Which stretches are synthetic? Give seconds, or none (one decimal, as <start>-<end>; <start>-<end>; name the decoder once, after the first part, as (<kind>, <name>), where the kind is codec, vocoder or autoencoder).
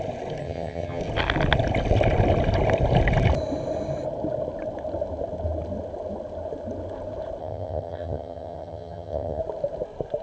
0.4-1.0 (vocoder, HiFi-GAN); 7.4-9.4